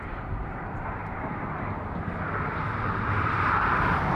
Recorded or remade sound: remade